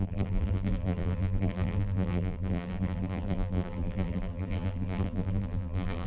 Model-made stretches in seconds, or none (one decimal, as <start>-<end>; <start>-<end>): 0.0-6.1